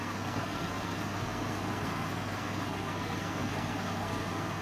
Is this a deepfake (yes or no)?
yes